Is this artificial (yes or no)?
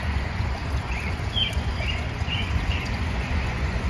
yes